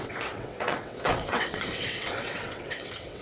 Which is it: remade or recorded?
remade